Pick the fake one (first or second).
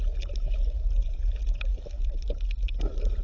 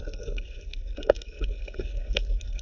second